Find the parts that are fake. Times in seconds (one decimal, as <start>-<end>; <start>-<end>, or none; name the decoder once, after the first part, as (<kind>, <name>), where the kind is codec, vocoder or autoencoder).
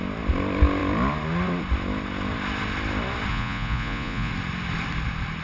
3.3-4.3 (vocoder, Vocos)